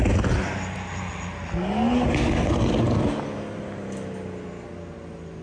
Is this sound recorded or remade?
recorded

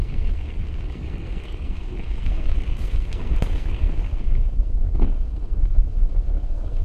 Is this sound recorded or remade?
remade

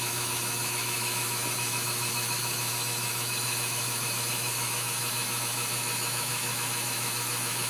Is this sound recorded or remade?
remade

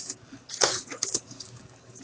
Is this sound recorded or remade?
remade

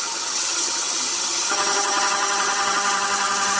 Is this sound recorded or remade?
remade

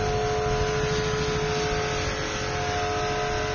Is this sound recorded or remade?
recorded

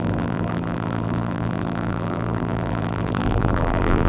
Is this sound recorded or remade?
remade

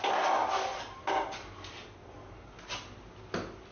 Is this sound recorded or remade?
recorded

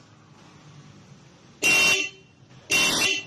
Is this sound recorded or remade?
recorded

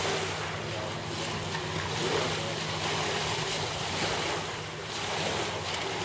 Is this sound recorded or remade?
recorded